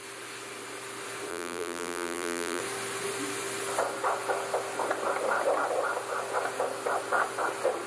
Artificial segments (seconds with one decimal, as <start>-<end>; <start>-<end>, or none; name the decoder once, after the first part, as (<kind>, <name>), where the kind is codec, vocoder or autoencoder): 1.3-2.6 (vocoder, BigVGAN v2)